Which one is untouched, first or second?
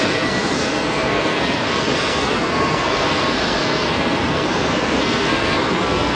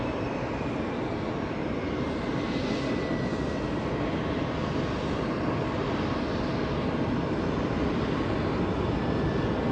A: second